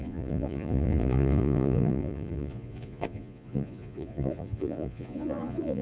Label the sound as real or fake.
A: fake